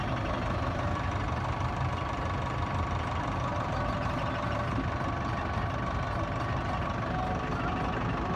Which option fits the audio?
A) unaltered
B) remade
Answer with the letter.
A